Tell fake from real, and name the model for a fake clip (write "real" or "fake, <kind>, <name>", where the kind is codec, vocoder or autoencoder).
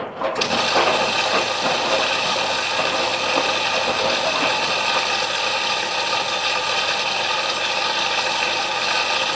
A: real